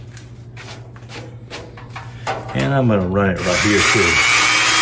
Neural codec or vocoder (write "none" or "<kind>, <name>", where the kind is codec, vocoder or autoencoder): none